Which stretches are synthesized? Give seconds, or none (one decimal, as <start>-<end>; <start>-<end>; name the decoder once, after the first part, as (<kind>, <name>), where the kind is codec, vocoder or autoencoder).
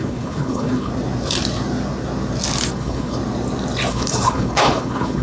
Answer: 0.0-0.9 (codec, HILCodec); 2.7-3.2; 3.9-5.2